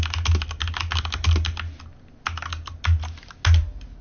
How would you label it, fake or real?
real